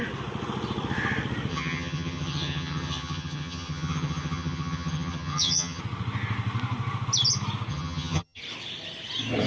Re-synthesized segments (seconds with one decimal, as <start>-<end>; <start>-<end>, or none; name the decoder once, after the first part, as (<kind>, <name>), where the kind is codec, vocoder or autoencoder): 1.5-5.8 (vocoder, HiFi-GAN); 7.7-8.4